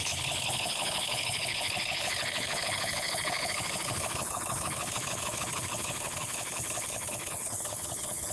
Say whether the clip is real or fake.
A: fake